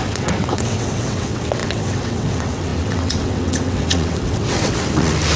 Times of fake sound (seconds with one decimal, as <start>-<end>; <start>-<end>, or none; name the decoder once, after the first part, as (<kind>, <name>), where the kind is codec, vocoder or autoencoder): 0.0-5.4 (vocoder, WaveNeXt)